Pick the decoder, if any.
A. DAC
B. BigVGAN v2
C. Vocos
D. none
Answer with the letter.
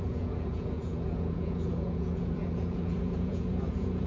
C